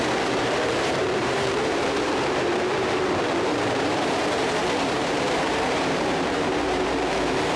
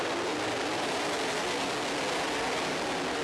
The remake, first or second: first